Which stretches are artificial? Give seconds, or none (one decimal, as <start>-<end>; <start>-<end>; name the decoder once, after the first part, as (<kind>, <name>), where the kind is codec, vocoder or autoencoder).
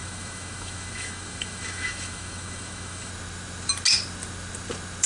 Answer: 0.0-3.1 (autoencoder, DAC-VAE)